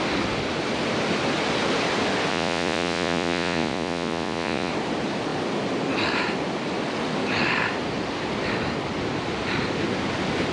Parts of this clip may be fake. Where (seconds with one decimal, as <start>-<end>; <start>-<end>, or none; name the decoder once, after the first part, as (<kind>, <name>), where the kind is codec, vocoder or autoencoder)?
2.3-4.7 (vocoder, Vocos)